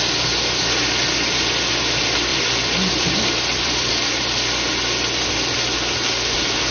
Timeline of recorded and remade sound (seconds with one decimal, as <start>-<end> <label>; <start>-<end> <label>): 0.0-2.3 recorded; 2.3-3.9 remade; 3.9-6.7 recorded

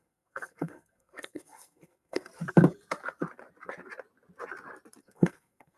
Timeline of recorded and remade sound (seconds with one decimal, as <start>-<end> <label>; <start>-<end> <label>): 0.0-2.3 remade; 2.3-5.0 recorded; 5.0-5.8 remade

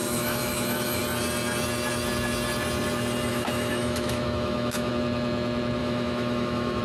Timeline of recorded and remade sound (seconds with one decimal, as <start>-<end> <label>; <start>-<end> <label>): 0.0-1.0 remade; 1.0-3.3 recorded; 3.3-4.9 remade; 4.9-5.8 recorded; 5.8-6.8 remade